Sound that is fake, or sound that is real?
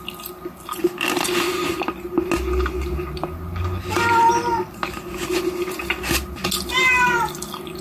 real